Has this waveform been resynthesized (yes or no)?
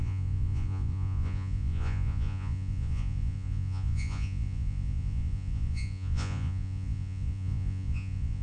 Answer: yes